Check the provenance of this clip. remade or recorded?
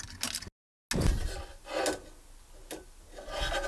recorded